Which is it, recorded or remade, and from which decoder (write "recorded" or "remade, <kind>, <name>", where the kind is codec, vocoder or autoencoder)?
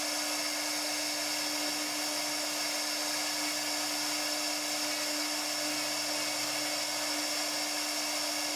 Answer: recorded